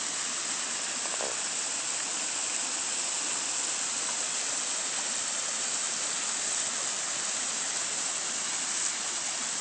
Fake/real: real